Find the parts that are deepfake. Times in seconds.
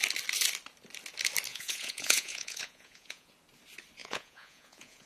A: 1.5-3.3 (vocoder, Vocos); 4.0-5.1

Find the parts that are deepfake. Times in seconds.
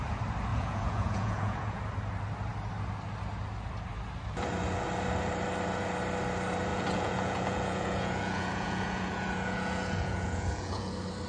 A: 0.5-1.8 (vocoder, Vocos); 6.7-10.9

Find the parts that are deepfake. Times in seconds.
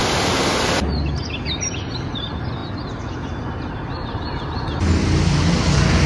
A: none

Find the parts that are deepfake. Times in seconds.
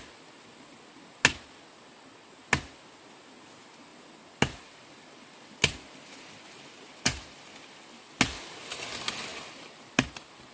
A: none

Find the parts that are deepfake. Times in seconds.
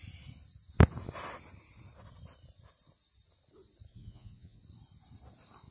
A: 3.9-4.6 (vocoder, Vocos)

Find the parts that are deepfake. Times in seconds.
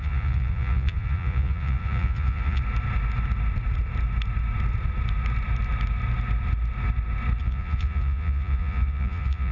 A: 0.0-2.6 (vocoder, Vocos); 7.4-9.5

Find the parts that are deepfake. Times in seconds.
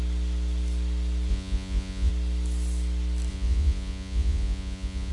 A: 1.3-2.1 (vocoder, Vocos); 3.3-5.1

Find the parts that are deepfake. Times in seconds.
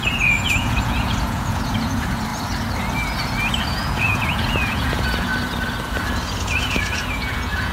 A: 0.0-2.3 (vocoder, Vocos); 3.7-5.3; 6.4-7.7